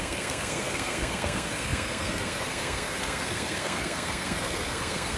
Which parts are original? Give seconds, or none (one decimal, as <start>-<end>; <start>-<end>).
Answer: none